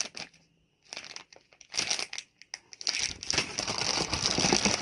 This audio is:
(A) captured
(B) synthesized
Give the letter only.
A